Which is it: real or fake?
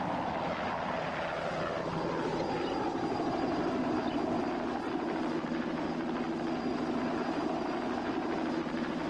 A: real